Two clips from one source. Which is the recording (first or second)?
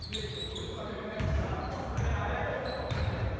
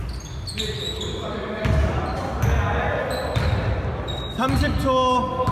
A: second